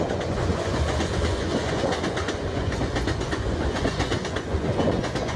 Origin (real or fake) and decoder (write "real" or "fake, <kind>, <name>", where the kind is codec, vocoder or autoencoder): fake, vocoder, Vocos